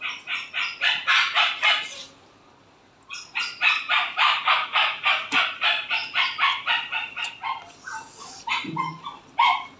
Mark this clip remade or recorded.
remade